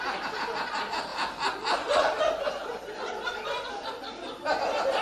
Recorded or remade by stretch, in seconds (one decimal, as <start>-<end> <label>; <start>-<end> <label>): 0.0-1.1 recorded; 1.1-2.2 remade; 2.2-2.6 recorded; 2.6-4.0 remade; 4.0-5.0 recorded